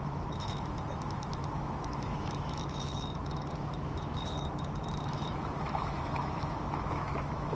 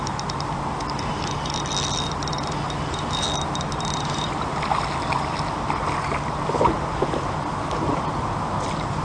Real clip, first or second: second